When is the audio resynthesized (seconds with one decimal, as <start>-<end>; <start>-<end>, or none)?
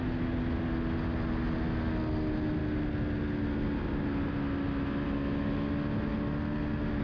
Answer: none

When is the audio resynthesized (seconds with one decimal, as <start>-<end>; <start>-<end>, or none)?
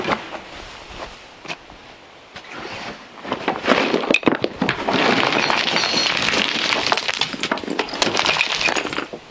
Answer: none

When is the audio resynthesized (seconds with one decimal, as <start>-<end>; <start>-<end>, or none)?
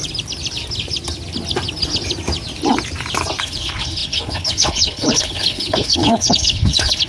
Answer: 3.4-7.1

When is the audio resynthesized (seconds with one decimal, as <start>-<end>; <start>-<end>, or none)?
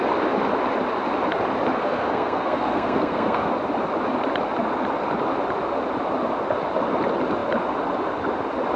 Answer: 1.8-3.5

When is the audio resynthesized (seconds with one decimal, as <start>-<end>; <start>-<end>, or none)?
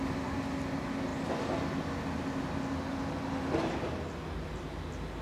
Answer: none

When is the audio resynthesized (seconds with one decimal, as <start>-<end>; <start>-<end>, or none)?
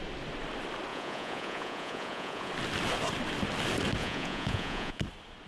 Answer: 0.9-2.5; 4.0-5.0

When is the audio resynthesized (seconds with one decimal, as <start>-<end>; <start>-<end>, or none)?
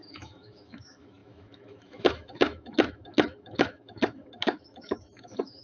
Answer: 0.0-5.6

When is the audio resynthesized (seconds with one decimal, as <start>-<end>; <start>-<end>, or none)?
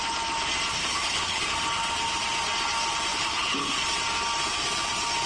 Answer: 0.8-1.5; 3.1-3.8